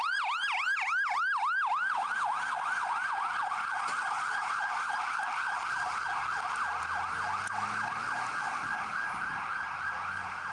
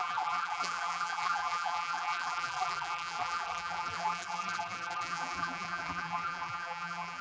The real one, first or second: first